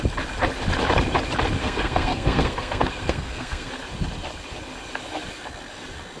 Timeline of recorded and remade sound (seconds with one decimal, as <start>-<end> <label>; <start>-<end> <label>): 0.0-1.6 recorded; 1.6-3.7 remade; 3.7-6.2 recorded